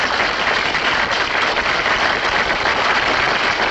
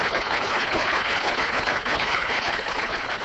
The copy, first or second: second